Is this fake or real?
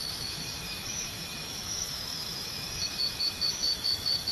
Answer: fake